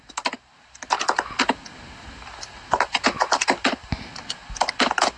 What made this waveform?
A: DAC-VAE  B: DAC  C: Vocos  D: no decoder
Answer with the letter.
D